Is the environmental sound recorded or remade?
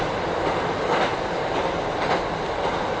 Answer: recorded